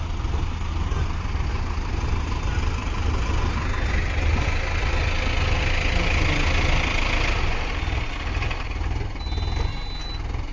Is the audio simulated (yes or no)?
no